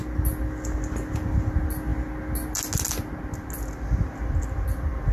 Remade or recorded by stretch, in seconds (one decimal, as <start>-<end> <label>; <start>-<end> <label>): 0.0-5.1 recorded